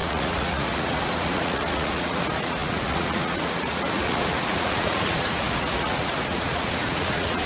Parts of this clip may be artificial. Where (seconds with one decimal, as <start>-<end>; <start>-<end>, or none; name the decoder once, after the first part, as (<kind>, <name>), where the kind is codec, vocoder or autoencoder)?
0.0-7.5 (vocoder, Vocos)